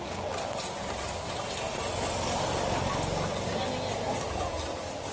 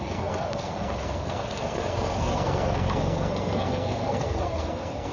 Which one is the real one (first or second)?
first